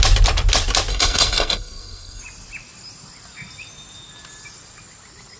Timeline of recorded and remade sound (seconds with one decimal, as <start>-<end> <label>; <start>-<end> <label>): 0.0-0.9 recorded; 0.9-2.2 remade; 2.2-5.4 recorded